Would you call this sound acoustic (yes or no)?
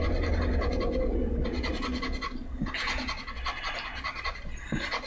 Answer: yes